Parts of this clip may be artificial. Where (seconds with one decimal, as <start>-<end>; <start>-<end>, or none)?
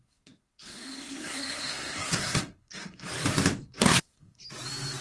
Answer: 0.0-3.1; 3.8-4.4